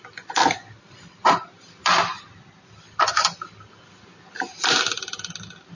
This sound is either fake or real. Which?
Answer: real